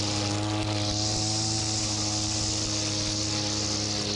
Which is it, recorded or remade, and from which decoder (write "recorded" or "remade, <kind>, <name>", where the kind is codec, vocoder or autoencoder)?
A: recorded